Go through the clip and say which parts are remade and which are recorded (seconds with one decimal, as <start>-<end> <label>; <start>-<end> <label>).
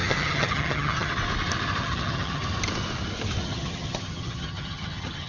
0.0-1.1 remade; 1.1-1.8 recorded; 1.8-2.4 remade; 2.4-3.4 recorded; 3.4-5.3 remade